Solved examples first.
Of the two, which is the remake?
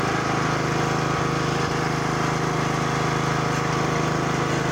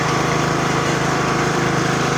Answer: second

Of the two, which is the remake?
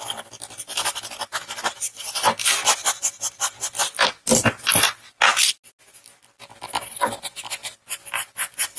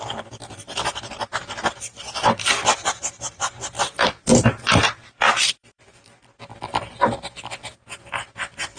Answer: second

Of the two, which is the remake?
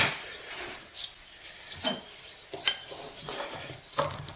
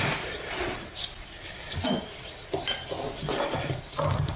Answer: second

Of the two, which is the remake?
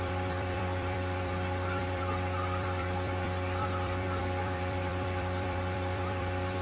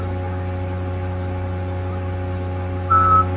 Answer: first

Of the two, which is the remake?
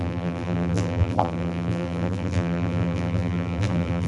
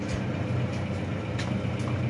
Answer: first